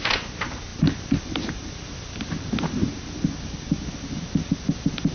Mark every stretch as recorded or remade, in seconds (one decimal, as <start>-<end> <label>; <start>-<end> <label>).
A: 0.0-5.1 recorded